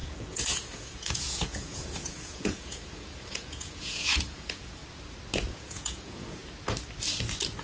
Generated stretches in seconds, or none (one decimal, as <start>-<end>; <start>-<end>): 0.0-4.8; 5.5-6.4